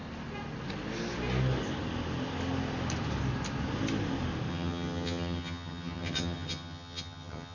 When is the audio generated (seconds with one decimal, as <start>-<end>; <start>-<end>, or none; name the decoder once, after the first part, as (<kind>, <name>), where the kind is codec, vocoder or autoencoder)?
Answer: 4.5-7.5 (vocoder, HiFi-GAN)